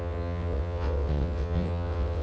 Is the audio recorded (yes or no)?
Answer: no